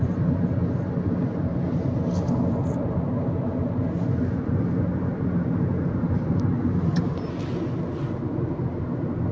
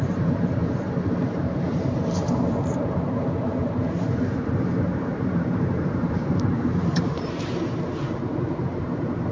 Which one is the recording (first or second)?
first